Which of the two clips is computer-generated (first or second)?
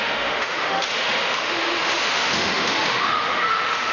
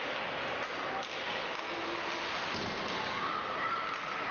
first